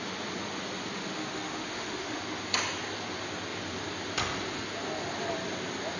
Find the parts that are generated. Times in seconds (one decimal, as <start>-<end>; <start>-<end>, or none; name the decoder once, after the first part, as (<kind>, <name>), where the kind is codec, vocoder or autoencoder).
0.9-2.2 (autoencoder, DAC-VAE)